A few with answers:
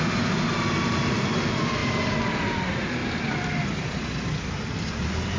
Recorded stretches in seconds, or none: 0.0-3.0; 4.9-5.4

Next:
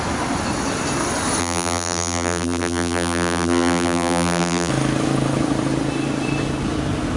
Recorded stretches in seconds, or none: 0.0-1.4; 4.7-7.2

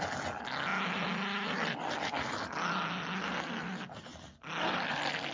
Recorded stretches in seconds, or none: 0.0-5.3